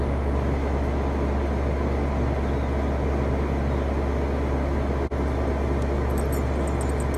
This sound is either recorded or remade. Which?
recorded